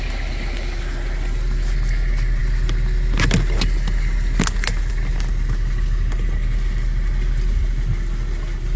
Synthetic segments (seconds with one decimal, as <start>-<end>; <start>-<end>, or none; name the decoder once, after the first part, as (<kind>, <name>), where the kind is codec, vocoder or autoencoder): none